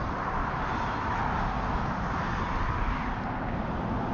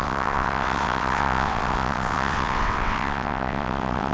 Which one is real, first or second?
first